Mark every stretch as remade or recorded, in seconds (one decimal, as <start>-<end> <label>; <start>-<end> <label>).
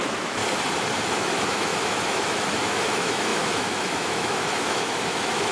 0.0-0.4 remade; 0.4-1.0 recorded; 1.0-5.5 remade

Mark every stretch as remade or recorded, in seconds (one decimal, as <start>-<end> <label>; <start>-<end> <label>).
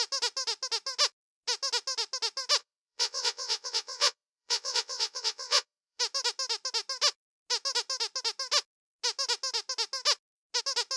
0.0-2.6 recorded; 2.6-6.0 remade; 6.0-11.0 recorded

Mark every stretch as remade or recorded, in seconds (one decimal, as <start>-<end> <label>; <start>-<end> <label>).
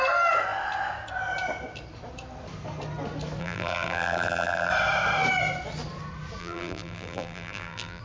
0.0-3.4 recorded; 3.4-4.7 remade; 4.7-6.4 recorded; 6.4-8.0 remade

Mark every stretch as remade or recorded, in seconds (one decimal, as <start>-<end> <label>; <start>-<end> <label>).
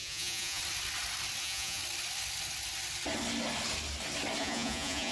0.0-0.6 remade; 0.6-1.4 recorded; 1.4-1.8 remade; 1.8-4.4 recorded; 4.4-5.1 remade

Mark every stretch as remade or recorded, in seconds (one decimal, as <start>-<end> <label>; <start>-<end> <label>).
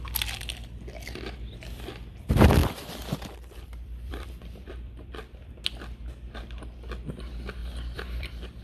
0.0-2.6 recorded; 2.6-5.5 remade; 5.5-7.6 recorded; 7.6-8.6 remade